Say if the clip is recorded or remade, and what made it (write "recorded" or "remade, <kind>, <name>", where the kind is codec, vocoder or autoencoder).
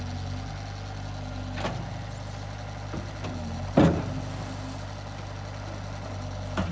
recorded